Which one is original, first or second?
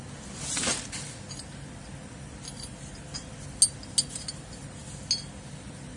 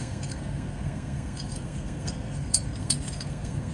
first